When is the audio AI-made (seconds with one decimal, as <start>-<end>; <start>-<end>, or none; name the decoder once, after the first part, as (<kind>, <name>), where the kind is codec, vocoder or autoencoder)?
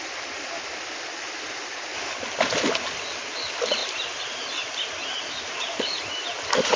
3.8-4.5 (vocoder, BigVGAN v2); 5.0-6.8